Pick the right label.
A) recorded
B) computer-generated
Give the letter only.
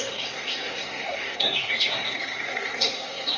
B